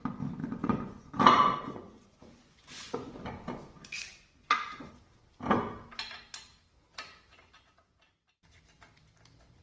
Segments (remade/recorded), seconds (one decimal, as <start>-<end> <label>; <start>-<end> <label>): 0.0-0.4 recorded; 0.4-4.9 remade; 4.9-9.6 recorded